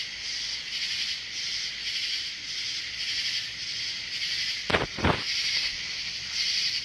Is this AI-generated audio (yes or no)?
no